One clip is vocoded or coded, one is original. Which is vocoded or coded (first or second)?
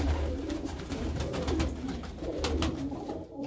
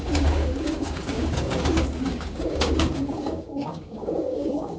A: second